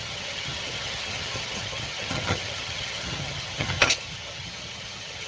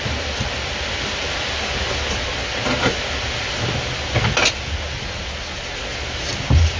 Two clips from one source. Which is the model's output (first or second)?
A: first